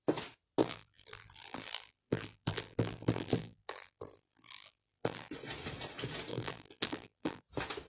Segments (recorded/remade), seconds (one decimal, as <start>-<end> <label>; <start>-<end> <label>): 0.0-0.6 recorded; 0.6-5.3 remade; 5.3-6.3 recorded; 6.3-7.4 remade; 7.4-7.9 recorded